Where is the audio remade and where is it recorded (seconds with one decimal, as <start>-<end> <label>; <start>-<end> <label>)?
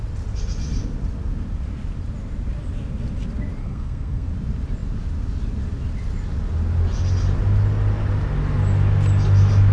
0.0-3.6 recorded; 3.6-4.3 remade; 4.3-9.7 recorded